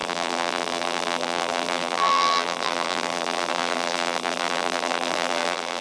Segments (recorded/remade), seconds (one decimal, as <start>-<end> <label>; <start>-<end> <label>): 0.0-5.8 remade